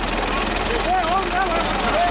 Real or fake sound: real